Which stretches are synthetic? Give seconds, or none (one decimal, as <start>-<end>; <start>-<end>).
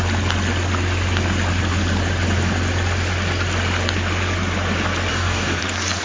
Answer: 5.1-5.6